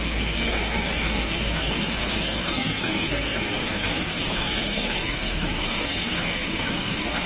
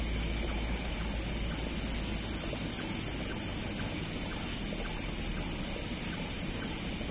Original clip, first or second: second